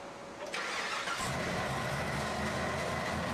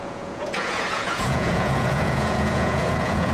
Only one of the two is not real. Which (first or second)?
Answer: second